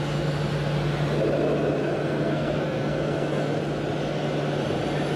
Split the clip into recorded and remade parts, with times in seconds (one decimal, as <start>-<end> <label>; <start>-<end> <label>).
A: 0.0-1.8 recorded; 1.8-3.6 remade; 3.6-5.2 recorded